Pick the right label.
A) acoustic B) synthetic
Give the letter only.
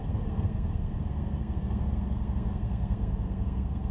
B